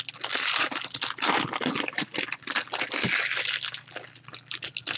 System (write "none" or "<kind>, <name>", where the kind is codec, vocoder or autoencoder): none